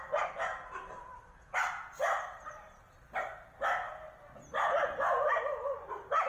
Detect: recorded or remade recorded